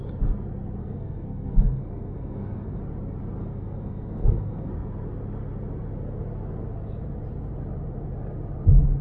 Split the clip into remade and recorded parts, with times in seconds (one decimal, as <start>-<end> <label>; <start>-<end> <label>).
0.0-0.8 recorded; 0.8-2.8 remade; 2.8-3.4 recorded; 3.4-4.7 remade; 4.7-9.0 recorded